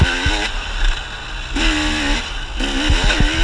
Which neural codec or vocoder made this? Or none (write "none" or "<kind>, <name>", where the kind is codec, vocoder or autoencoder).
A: none